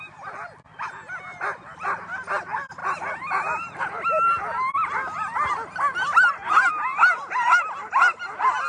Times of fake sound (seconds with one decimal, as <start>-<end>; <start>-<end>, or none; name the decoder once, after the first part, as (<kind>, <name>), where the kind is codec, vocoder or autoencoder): none